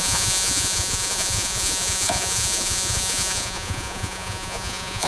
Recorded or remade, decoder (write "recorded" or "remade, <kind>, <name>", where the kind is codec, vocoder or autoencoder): remade, vocoder, Vocos